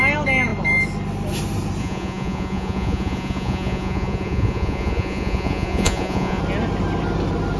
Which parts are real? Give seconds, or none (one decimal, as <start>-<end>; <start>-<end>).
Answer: 0.0-1.8; 6.4-7.6